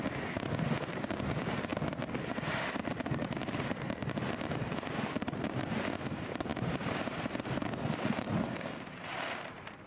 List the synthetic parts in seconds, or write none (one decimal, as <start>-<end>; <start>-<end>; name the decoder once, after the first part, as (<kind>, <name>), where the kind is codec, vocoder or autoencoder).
0.0-1.7 (vocoder, BigVGAN v2); 2.3-4.0; 5.1-9.9